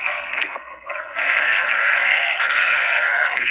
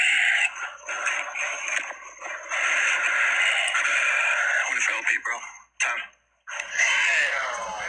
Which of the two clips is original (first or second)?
second